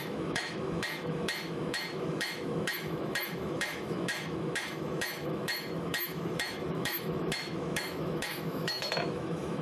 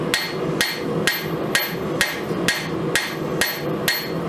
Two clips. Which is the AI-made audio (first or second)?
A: first